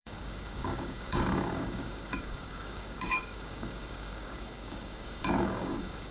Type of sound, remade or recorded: remade